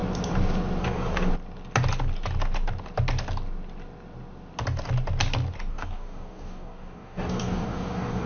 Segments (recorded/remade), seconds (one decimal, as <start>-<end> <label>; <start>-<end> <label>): 0.0-0.8 recorded; 0.8-1.3 remade; 1.3-5.7 recorded; 5.7-8.3 remade